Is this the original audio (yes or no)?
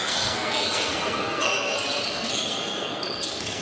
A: no